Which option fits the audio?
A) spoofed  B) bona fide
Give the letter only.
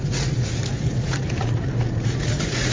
A